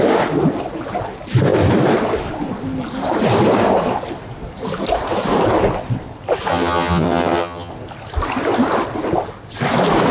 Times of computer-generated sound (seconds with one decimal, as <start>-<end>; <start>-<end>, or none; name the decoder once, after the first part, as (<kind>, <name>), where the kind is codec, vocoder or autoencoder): 6.5-7.7 (vocoder, HiFi-GAN)